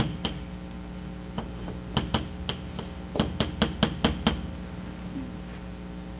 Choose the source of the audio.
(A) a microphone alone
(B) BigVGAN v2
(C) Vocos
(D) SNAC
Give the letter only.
A